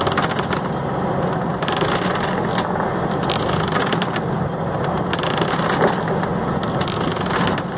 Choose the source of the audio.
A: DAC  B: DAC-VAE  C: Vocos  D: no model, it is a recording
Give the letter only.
D